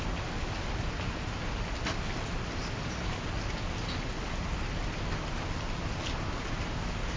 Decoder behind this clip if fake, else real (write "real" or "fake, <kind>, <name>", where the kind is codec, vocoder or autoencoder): real